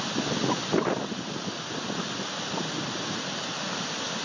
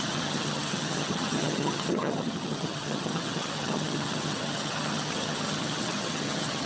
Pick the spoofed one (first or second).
second